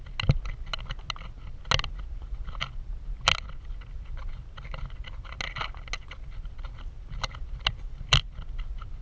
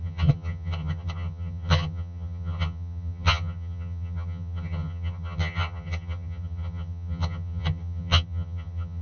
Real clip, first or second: first